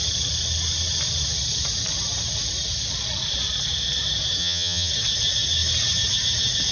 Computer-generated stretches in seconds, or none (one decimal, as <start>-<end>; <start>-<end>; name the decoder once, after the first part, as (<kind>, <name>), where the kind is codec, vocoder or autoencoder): 4.4-4.9 (vocoder, HiFi-GAN)